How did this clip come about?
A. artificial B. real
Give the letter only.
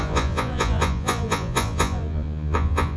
A